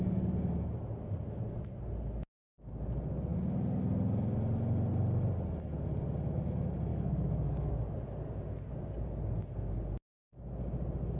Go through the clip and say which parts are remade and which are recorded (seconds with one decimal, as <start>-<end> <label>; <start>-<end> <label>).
0.0-6.9 recorded; 6.9-7.7 remade; 7.7-11.2 recorded